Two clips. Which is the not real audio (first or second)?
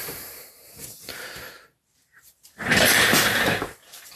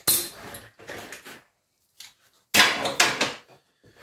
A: first